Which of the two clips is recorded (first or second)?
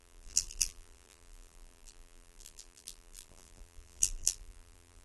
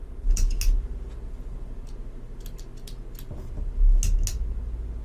second